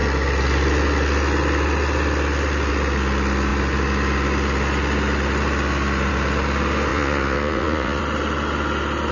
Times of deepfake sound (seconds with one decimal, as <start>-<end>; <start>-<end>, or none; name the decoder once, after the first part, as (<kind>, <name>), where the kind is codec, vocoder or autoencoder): 6.9-8.0 (vocoder, Vocos)